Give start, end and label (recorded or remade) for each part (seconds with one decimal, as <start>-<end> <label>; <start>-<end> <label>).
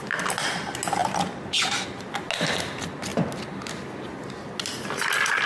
0.0-5.5 recorded